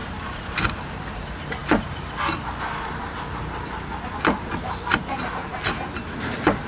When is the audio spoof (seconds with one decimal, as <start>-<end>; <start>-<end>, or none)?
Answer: 0.0-0.6